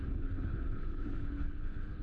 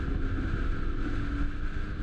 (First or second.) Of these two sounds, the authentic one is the second